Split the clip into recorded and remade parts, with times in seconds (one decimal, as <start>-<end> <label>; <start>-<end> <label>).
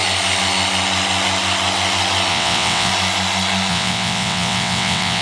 0.0-2.3 recorded; 2.3-2.9 remade; 2.9-3.7 recorded; 3.7-5.2 remade